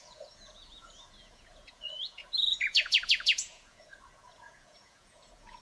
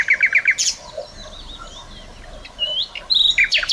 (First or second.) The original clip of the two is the second